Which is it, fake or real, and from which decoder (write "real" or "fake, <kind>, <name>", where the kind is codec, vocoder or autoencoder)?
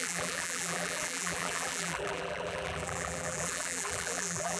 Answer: fake, vocoder, BigVGAN v2